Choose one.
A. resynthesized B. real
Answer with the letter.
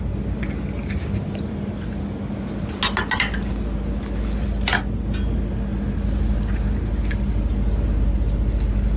B